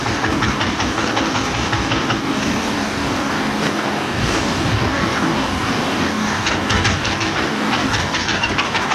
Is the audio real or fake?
fake